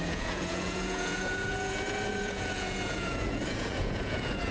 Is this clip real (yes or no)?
no